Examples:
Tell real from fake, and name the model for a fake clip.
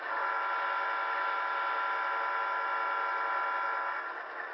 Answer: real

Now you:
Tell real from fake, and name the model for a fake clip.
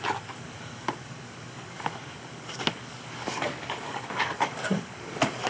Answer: fake, codec, DAC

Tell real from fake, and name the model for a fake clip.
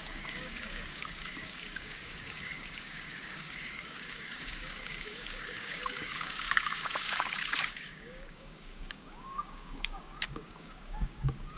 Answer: fake, codec, DAC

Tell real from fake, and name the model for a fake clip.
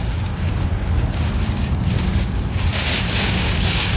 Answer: fake, codec, DAC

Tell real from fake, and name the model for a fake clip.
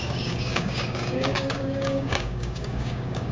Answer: fake, codec, DAC